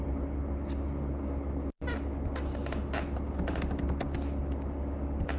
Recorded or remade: recorded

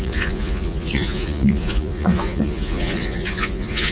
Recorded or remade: remade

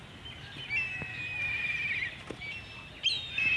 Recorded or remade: recorded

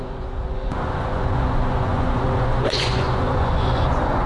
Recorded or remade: remade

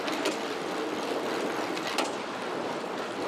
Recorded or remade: recorded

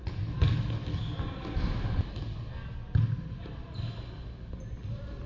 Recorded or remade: recorded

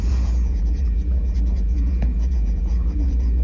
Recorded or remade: remade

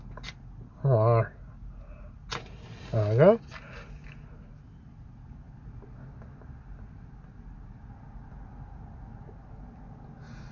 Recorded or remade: recorded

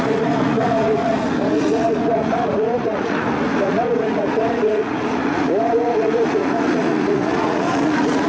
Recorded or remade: remade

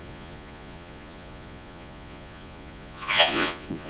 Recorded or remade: remade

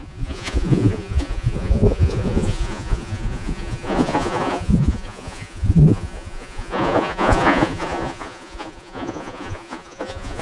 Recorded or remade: remade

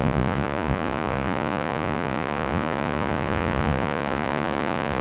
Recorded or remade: remade